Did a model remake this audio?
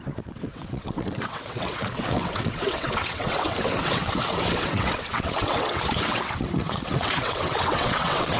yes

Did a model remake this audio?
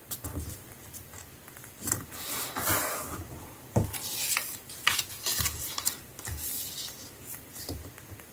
no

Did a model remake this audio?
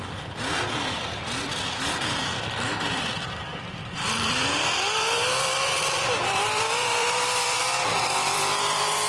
yes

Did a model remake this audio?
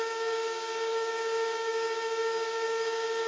yes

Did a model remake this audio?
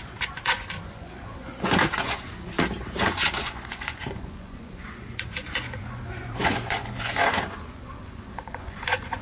yes